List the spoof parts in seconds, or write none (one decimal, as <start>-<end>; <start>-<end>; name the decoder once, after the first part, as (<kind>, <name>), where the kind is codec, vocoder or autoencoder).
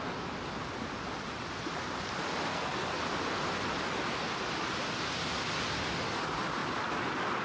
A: 2.5-3.0 (codec, SNAC)